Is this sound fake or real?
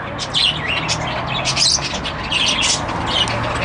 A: real